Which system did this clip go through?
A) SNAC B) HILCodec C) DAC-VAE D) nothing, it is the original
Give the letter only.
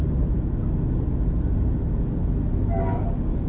D